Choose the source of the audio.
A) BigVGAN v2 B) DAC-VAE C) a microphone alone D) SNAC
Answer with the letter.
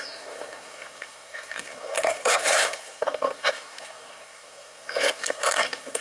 D